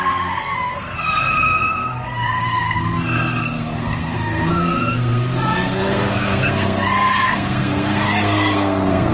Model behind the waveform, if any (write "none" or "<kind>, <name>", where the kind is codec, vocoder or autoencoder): codec, SNAC